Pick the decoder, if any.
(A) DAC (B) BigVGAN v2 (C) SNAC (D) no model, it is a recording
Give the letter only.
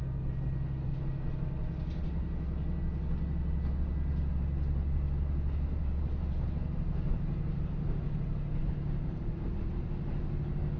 D